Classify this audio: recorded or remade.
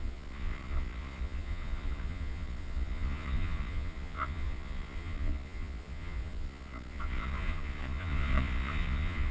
remade